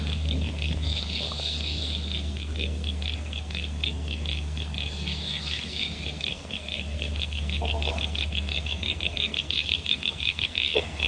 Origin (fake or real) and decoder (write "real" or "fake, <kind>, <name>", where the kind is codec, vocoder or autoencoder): fake, codec, SNAC